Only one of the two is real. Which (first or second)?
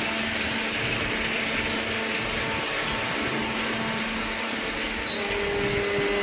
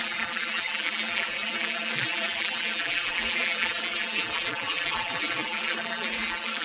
first